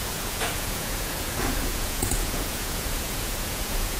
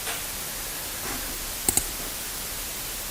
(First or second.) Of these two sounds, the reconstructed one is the first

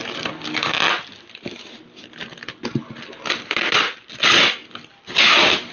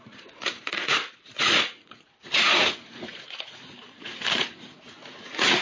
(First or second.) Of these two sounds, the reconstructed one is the second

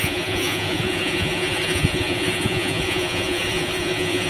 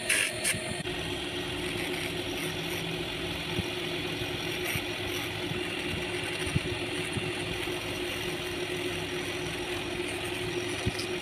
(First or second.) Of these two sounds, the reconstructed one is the first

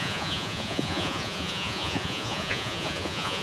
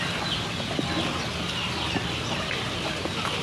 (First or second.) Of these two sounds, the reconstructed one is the first